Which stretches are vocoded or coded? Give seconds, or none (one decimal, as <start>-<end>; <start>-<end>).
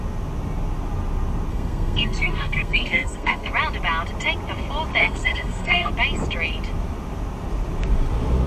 1.5-3.5; 5.0-5.9